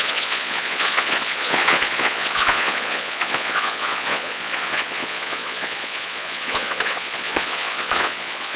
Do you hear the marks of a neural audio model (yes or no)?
yes